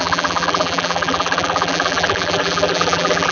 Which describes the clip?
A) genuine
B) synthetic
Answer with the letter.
B